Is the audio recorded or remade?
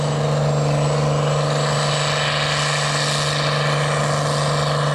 recorded